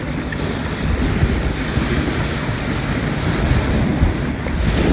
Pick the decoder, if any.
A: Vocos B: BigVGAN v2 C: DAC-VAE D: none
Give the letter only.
D